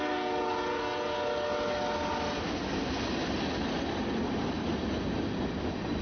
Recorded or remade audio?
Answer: recorded